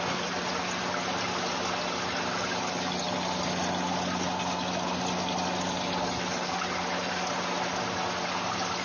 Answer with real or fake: real